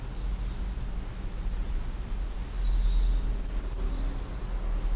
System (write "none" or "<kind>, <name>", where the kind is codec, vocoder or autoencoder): none